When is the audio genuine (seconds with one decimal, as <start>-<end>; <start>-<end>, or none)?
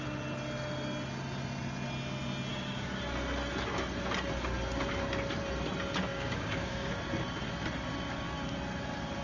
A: 0.0-2.5; 3.0-6.1; 6.9-9.2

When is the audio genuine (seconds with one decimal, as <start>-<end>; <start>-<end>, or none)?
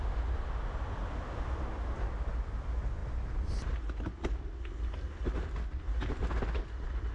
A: 0.0-7.1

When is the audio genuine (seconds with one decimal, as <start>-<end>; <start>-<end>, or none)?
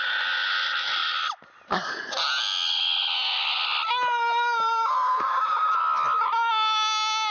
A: 0.0-7.3